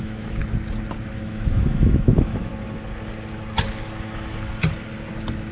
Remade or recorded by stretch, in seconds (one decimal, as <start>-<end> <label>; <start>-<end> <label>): 0.0-0.4 remade; 0.4-1.1 recorded; 1.1-2.5 remade; 2.5-5.5 recorded